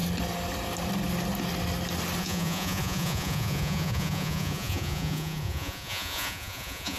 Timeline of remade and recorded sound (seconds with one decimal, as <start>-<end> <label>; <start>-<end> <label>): 0.0-2.2 recorded; 2.2-7.0 remade